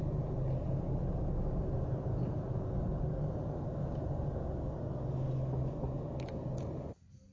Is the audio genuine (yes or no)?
yes